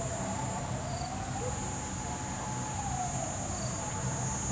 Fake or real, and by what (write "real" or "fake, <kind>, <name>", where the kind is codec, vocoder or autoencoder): real